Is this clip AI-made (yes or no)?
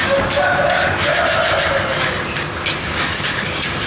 no